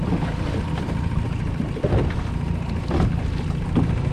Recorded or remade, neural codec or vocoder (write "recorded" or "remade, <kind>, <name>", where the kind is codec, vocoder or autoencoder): recorded